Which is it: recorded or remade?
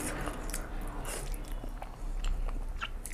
recorded